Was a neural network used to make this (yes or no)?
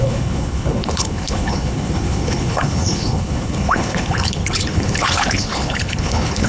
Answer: yes